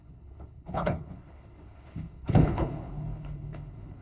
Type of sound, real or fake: fake